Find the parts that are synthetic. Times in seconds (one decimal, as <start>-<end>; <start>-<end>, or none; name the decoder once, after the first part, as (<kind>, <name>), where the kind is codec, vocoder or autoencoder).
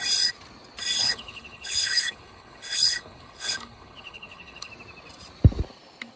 1.0-4.7 (codec, HILCodec)